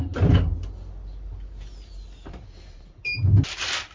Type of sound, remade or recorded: recorded